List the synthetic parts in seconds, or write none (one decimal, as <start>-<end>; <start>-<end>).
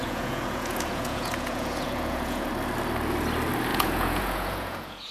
0.0-2.5; 3.7-5.1